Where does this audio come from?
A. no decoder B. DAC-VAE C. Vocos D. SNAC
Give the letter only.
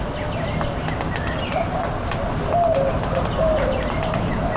A